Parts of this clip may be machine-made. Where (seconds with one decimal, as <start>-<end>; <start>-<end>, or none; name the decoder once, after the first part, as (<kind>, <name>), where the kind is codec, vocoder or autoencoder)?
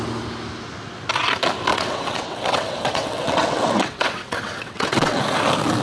1.7-5.2 (vocoder, WaveNeXt)